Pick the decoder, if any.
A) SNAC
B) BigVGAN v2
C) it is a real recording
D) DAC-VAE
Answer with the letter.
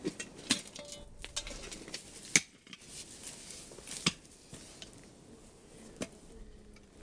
C